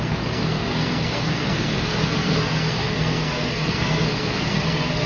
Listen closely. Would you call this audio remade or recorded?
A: remade